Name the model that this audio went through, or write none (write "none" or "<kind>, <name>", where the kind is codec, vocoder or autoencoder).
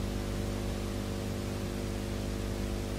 none